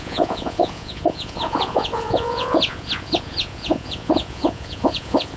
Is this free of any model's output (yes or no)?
no